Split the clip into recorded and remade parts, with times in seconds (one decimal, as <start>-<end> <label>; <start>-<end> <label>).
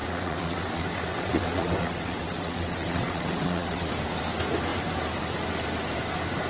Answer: 0.0-3.9 remade; 3.9-6.5 recorded